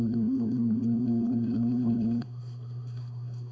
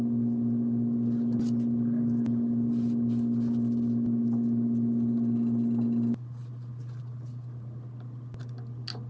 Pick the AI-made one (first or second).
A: first